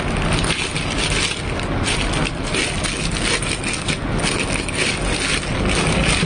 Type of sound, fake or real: real